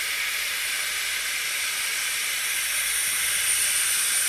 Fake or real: real